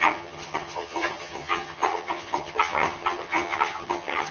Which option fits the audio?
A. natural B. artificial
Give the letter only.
B